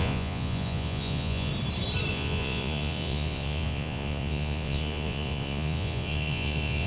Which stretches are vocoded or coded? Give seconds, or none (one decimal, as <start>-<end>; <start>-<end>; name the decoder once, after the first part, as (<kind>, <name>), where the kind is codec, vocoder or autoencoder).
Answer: 0.0-1.5 (vocoder, Vocos); 2.1-6.9